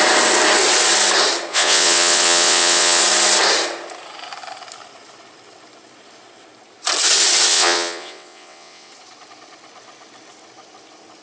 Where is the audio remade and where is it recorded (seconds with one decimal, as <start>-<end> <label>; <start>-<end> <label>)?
0.0-1.5 recorded; 1.5-3.0 remade; 3.0-7.5 recorded; 7.5-8.9 remade; 8.9-11.2 recorded